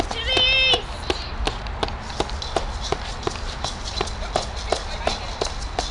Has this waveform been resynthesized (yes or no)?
no